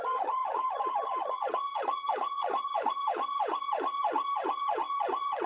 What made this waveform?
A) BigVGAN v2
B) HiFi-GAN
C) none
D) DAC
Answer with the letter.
B